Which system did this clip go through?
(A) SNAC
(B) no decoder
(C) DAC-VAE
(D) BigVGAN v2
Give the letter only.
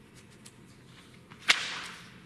B